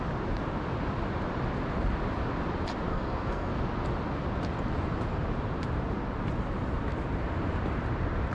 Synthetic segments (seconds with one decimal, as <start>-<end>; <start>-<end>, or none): 2.9-3.5